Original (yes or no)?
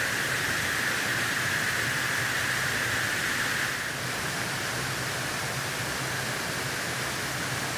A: yes